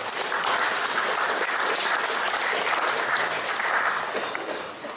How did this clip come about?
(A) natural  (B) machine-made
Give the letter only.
A